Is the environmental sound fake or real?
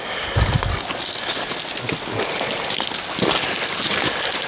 real